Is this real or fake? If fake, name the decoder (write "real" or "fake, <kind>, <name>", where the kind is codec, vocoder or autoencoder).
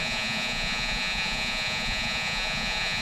fake, vocoder, Vocos